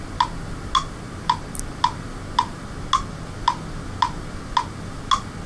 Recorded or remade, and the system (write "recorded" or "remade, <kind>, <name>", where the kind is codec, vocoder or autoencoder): recorded